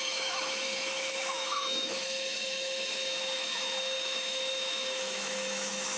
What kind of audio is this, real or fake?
fake